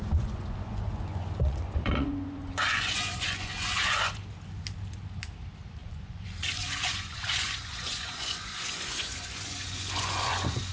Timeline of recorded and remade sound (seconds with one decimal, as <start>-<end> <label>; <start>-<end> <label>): 0.0-4.3 remade; 4.3-5.8 recorded; 5.8-10.7 remade